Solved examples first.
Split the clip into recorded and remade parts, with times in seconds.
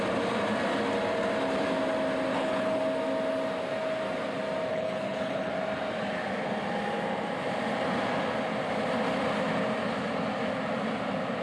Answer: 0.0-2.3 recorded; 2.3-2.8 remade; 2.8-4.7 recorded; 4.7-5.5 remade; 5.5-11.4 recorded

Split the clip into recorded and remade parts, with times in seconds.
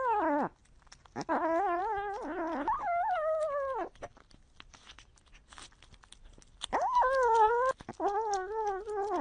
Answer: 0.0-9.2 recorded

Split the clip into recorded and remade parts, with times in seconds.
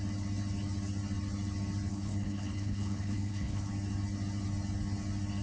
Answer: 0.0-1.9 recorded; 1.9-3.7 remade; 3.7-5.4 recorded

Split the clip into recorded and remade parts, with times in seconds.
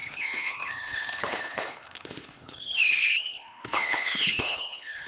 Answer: 0.0-5.1 remade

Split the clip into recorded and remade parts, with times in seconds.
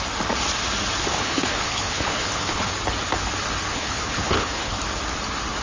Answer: 0.0-1.0 recorded; 1.0-2.7 remade; 2.7-3.7 recorded; 3.7-4.8 remade; 4.8-5.6 recorded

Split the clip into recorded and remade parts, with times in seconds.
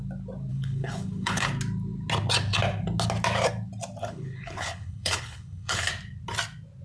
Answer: 0.0-0.5 recorded; 0.5-1.5 remade; 1.5-4.0 recorded; 4.0-5.9 remade; 5.9-6.8 recorded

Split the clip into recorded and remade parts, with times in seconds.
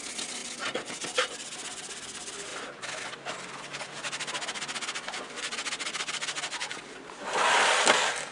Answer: 0.0-8.3 recorded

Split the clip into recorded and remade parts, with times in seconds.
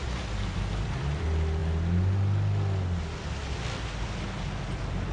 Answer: 0.0-5.1 recorded